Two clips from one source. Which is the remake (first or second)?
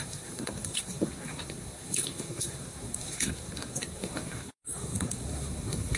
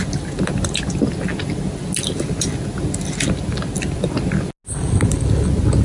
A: first